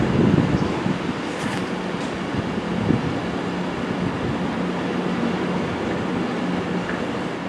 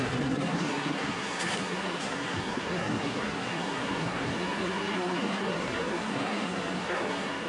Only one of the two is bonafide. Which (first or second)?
first